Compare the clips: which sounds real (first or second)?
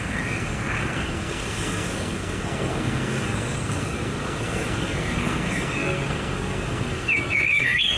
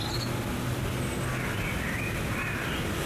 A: second